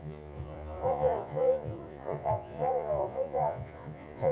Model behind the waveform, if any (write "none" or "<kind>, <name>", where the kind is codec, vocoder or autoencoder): vocoder, Vocos